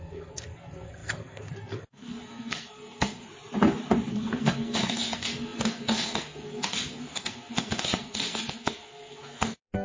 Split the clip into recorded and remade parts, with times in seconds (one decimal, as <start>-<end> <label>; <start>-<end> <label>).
0.0-3.3 remade; 3.3-4.1 recorded; 4.1-9.8 remade